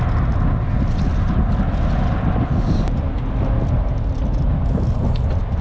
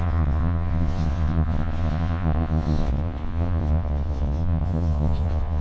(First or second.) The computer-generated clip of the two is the second